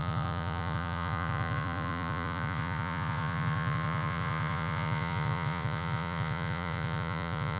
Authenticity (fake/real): fake